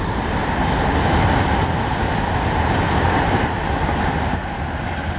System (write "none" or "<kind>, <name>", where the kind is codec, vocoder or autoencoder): none